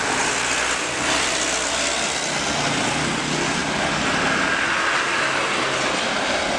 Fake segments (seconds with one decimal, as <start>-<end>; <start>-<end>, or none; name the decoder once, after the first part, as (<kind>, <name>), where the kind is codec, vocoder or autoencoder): none